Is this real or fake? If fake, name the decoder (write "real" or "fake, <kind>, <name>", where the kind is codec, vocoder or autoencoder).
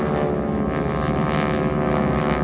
real